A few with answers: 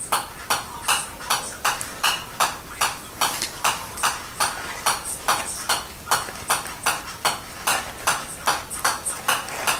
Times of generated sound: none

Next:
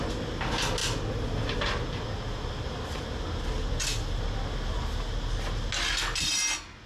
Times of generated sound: none